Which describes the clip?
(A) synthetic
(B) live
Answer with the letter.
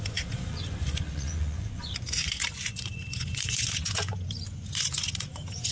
A